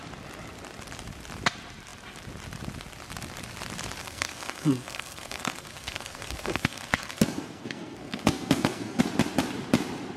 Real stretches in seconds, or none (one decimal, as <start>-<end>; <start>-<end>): 0.0-4.0; 9.0-10.2